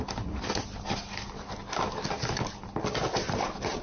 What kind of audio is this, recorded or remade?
recorded